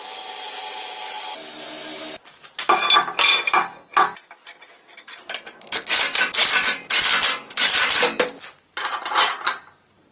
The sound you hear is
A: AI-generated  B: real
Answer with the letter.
B